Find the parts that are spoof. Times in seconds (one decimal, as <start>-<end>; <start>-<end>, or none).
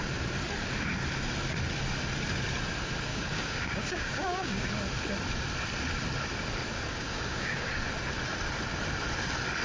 3.1-4.7; 6.9-7.7